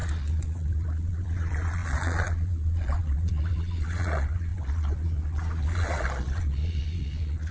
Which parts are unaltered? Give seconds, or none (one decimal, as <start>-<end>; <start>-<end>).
none